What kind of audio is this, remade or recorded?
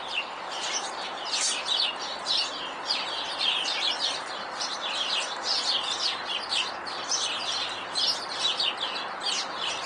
recorded